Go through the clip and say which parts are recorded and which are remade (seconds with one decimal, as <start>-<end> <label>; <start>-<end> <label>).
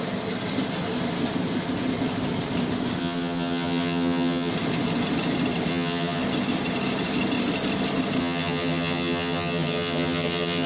0.0-3.0 recorded; 3.0-4.5 remade; 4.5-5.7 recorded; 5.7-6.2 remade; 6.2-8.2 recorded; 8.2-10.7 remade